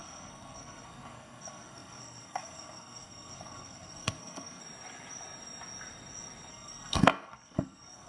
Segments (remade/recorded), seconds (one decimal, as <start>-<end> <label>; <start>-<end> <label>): 0.0-4.6 remade; 4.6-6.5 recorded; 6.5-8.1 remade